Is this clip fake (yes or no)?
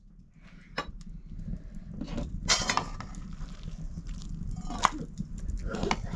no